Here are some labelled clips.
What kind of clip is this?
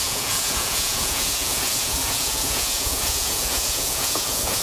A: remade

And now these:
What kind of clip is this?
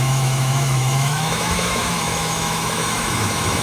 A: remade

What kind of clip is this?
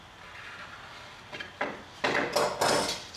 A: recorded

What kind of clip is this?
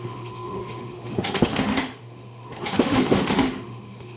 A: remade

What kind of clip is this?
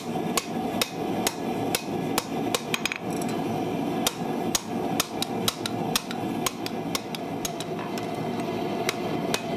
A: recorded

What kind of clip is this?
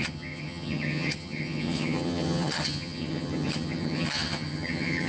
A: remade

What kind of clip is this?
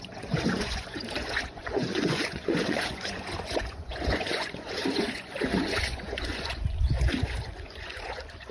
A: remade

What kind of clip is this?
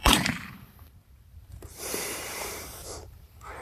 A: remade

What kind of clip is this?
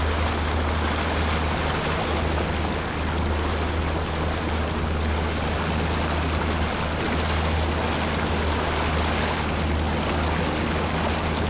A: recorded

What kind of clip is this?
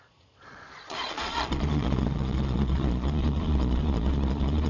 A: remade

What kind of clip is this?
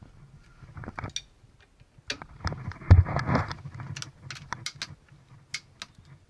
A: recorded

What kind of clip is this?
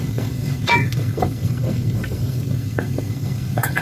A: remade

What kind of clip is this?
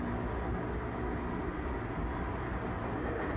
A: recorded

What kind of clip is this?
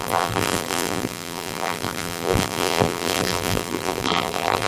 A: remade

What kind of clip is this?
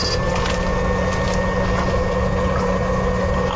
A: recorded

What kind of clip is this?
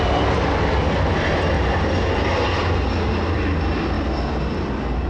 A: recorded